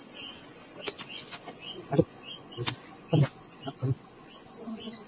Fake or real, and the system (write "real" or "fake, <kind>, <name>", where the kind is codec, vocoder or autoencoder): fake, vocoder, Vocos